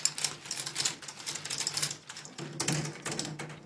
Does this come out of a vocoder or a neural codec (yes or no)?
no